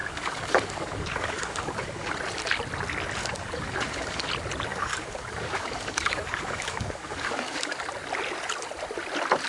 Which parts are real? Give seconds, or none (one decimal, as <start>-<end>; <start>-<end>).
2.1-3.2; 4.3-4.7; 7.8-9.5